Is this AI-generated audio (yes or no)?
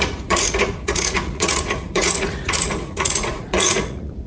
yes